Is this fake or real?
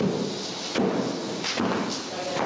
real